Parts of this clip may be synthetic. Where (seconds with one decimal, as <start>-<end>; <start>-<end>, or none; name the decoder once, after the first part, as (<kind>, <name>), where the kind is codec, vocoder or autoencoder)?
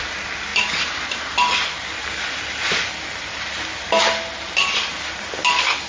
none